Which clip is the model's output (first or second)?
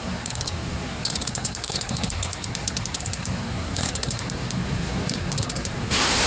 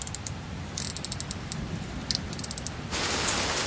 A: first